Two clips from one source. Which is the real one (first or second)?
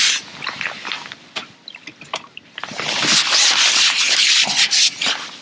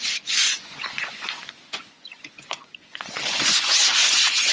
first